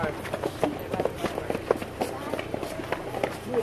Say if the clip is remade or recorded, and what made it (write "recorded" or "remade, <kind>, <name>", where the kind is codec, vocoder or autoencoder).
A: recorded